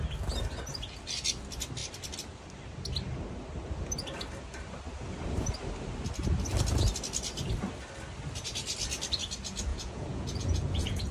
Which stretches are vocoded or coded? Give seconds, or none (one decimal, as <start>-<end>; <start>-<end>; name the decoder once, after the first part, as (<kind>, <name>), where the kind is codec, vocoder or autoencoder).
9.7-11.1 (vocoder, Vocos)